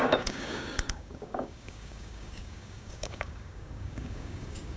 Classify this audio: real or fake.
fake